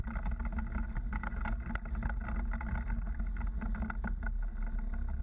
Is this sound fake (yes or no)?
no